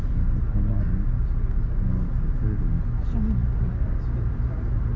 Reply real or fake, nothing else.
real